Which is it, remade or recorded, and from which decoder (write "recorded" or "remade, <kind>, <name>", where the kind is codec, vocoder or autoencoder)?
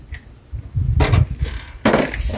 recorded